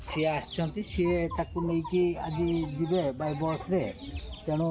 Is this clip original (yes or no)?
yes